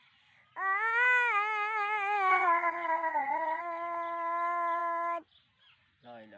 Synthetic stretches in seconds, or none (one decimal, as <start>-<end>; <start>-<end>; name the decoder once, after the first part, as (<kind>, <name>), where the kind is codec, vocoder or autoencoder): 2.3-3.6 (vocoder, HiFi-GAN)